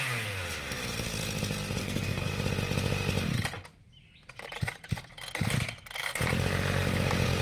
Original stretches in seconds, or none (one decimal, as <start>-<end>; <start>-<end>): 0.0-1.8; 2.3-7.4

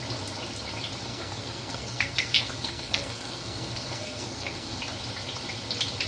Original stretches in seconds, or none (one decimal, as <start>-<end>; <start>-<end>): 0.0-1.1; 4.8-6.1